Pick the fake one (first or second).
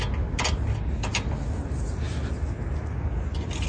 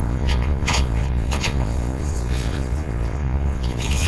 second